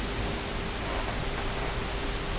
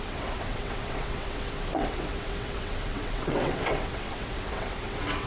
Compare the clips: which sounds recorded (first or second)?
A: first